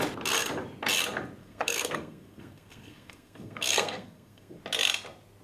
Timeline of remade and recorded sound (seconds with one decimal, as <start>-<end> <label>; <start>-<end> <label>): 0.0-1.4 recorded; 1.4-4.6 remade; 4.6-5.4 recorded